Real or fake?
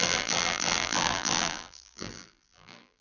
fake